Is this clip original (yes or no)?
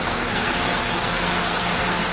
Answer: no